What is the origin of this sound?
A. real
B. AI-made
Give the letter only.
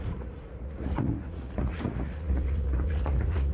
B